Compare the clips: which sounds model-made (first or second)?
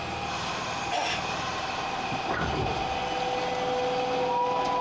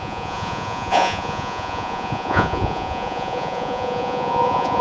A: second